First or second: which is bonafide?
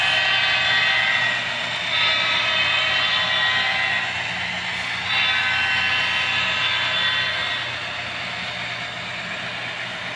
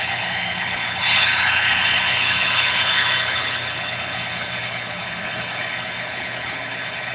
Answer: first